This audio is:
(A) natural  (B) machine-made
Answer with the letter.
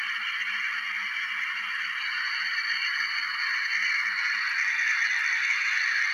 A